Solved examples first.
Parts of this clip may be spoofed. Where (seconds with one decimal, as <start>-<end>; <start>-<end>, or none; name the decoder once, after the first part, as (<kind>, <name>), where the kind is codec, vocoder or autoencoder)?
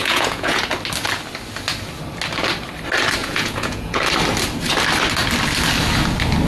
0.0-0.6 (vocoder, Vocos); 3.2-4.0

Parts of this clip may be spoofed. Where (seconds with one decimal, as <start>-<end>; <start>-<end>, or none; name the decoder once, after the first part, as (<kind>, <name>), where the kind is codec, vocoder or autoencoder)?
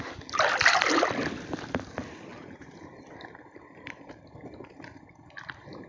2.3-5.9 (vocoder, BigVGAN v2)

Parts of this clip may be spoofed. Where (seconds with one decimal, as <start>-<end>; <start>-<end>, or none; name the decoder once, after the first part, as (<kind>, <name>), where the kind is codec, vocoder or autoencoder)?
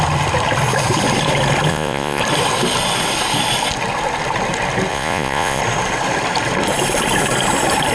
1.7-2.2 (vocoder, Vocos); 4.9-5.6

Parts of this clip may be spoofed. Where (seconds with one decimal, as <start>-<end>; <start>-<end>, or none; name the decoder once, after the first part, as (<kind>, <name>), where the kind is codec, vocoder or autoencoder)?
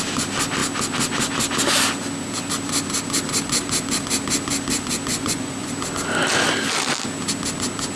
5.1-5.7 (vocoder, Vocos)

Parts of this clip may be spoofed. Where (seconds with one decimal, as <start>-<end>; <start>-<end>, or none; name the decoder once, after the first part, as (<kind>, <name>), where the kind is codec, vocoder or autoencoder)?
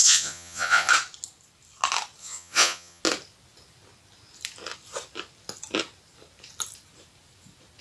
0.0-0.9 (vocoder, Vocos); 2.2-3.0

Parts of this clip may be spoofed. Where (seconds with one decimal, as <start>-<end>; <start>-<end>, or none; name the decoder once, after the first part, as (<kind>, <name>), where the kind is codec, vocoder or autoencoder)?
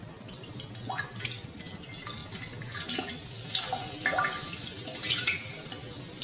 none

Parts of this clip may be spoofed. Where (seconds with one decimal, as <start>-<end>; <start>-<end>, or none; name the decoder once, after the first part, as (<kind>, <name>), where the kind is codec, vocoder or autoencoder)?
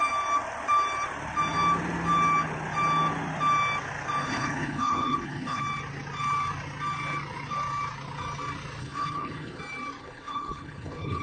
4.2-5.6 (codec, HILCodec); 8.8-9.6; 10.0-11.2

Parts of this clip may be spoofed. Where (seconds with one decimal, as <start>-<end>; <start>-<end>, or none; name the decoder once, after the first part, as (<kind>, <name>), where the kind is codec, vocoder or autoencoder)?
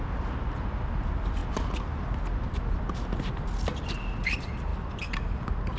none